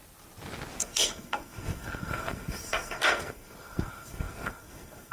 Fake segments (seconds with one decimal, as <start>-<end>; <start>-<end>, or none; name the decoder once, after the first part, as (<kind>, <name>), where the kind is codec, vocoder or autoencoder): 0.8-5.1 (codec, SNAC)